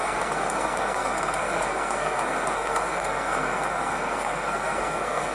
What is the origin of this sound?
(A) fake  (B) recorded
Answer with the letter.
A